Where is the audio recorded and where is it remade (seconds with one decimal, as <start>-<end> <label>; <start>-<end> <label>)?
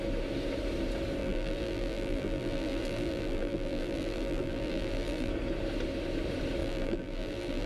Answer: 0.0-1.2 recorded; 1.2-5.3 remade; 5.3-6.6 recorded; 6.6-7.7 remade